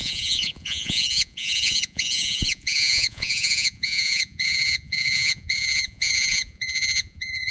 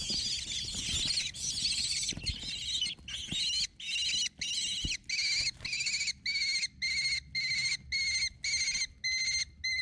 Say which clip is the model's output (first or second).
first